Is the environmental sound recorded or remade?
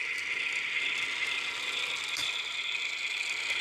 remade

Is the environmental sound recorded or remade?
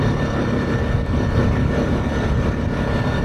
recorded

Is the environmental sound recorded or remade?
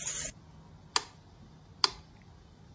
recorded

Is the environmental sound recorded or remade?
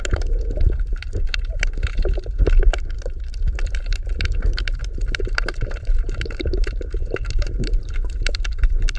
remade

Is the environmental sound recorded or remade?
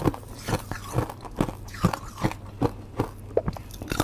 recorded